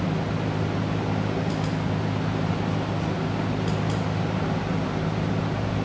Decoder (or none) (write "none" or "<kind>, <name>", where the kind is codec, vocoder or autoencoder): none